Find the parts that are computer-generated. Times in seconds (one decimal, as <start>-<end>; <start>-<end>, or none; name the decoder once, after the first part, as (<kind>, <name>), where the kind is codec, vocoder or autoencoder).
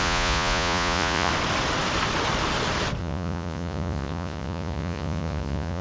0.0-1.3 (vocoder, Vocos); 3.0-5.8